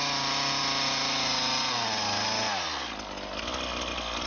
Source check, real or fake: real